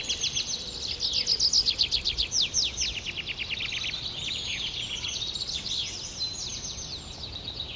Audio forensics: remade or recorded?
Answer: recorded